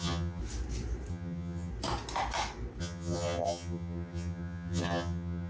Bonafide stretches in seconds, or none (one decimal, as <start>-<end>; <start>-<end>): 0.4-1.1; 1.7-2.8